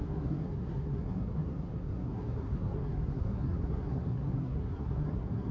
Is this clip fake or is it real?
fake